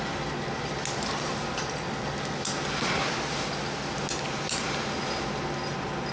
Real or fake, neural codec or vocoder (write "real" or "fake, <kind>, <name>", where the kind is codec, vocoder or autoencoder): real